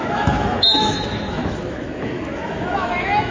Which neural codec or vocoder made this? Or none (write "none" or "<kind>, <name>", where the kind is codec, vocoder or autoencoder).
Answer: autoencoder, DAC-VAE